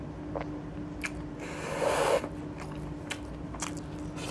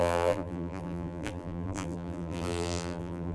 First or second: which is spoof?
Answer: second